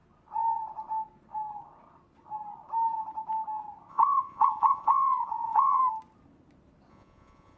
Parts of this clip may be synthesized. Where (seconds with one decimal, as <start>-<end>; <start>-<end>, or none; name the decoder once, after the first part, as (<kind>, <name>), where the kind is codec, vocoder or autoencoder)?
3.9-5.8 (vocoder, Vocos); 6.9-7.6